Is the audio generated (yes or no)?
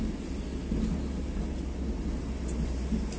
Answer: no